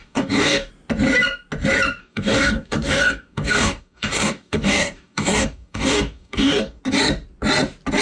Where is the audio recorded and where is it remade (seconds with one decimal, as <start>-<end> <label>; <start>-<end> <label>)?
0.0-0.7 remade; 0.7-2.0 recorded; 2.0-6.8 remade; 6.8-8.0 recorded